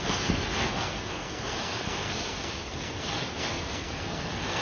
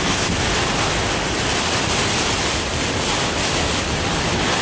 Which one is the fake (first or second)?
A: first